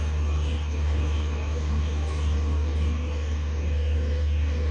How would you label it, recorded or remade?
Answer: remade